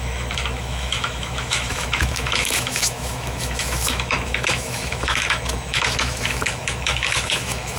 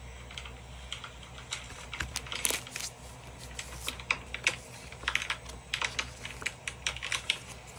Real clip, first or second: second